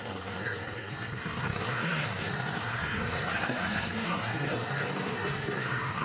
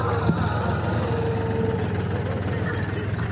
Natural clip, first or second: second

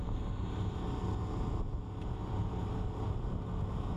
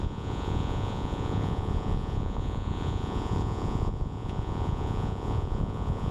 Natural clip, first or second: first